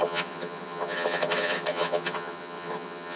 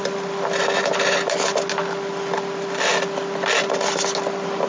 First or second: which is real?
second